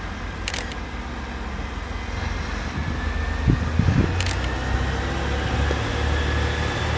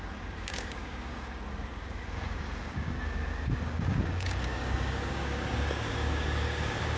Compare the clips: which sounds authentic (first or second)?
first